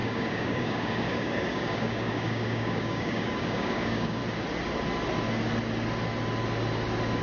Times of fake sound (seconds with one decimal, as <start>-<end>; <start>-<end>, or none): 0.0-4.2